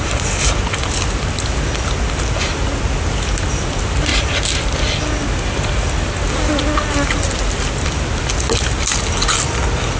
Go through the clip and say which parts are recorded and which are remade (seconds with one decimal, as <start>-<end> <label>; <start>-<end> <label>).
0.0-10.0 recorded